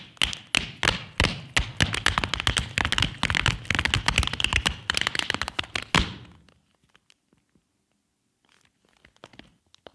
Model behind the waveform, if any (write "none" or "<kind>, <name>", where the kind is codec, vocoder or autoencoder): none